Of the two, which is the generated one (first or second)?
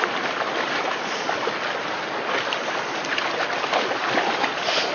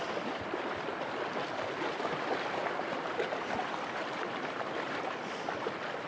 second